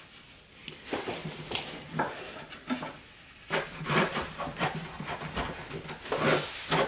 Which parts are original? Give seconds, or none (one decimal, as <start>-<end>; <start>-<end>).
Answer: 0.0-1.2; 5.3-6.9